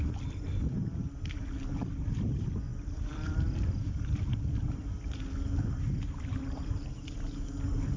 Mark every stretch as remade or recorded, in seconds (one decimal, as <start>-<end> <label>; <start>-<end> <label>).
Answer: 0.0-2.7 recorded; 2.7-4.8 remade; 4.8-8.0 recorded